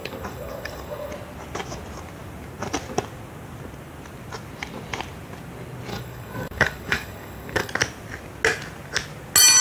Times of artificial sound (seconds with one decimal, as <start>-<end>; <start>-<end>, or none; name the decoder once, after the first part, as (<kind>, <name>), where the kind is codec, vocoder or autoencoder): 0.0-1.1 (codec, DAC); 5.9-7.7